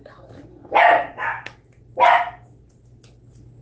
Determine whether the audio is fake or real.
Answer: real